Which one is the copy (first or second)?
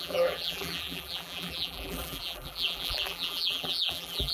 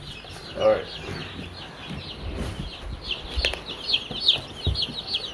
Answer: first